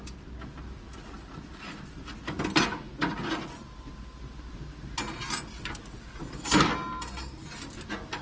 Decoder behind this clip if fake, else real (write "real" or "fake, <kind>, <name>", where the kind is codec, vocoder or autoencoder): real